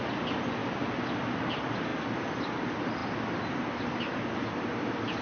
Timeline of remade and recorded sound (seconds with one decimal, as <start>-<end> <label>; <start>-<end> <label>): 0.0-0.6 remade; 0.6-1.2 recorded; 1.2-1.9 remade; 1.9-2.4 recorded; 2.4-3.0 remade; 3.0-4.5 recorded; 4.5-5.2 remade